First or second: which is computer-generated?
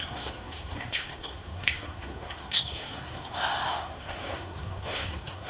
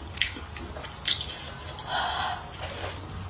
first